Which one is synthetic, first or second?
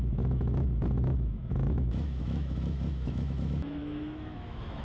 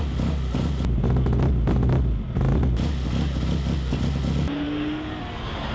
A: first